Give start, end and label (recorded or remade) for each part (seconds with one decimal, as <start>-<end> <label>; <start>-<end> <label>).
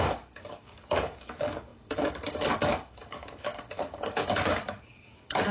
0.0-5.5 remade